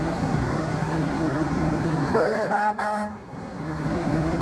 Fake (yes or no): yes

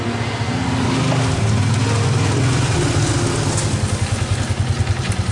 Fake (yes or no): no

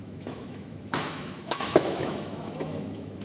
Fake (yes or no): yes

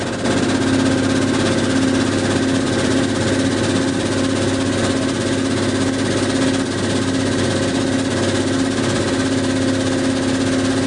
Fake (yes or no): no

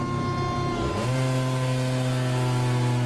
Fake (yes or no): no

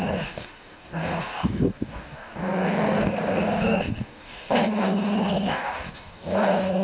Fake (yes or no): yes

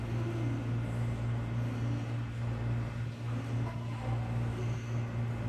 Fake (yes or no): no